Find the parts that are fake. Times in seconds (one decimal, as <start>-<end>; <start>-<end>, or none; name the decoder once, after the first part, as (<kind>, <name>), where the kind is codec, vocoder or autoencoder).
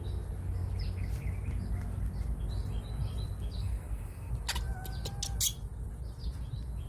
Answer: 3.6-4.3 (codec, SNAC)